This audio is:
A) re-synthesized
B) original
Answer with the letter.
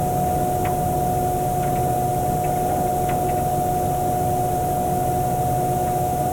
B